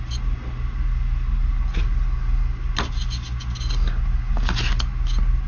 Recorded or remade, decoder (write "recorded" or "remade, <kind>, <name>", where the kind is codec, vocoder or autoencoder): recorded